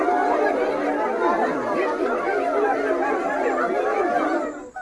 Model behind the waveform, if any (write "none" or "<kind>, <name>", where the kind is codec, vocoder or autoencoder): none